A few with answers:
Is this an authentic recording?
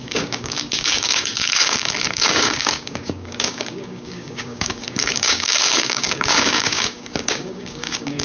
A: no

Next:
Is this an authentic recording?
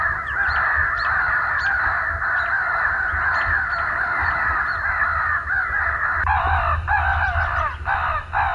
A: yes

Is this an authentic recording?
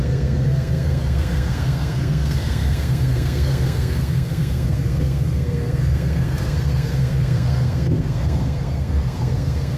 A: no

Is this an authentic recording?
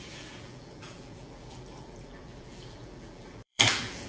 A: no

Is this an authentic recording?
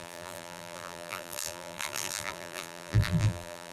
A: no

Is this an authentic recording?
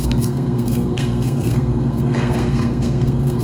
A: no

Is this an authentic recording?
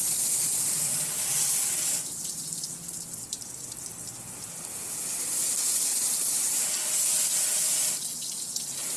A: yes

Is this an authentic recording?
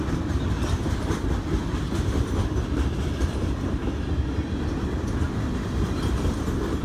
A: yes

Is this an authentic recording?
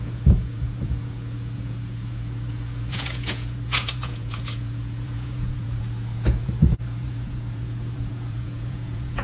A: no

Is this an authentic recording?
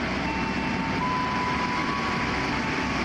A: yes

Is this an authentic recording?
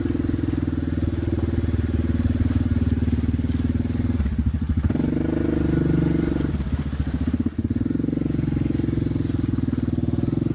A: yes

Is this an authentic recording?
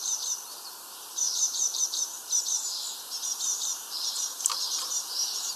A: no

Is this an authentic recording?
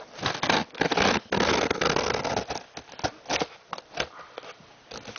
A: yes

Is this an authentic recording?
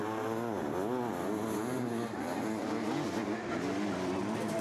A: yes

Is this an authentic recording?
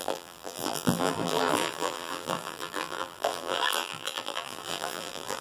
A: no